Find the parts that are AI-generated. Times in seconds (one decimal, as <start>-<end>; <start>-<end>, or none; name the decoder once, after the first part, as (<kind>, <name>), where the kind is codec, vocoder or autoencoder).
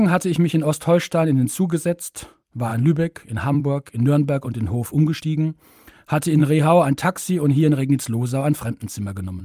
2.7-5.2 (vocoder, BigVGAN v2)